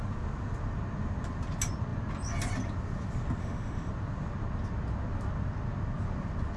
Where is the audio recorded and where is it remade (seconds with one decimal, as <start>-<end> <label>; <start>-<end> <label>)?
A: 0.0-3.4 recorded; 3.4-3.9 remade; 3.9-6.6 recorded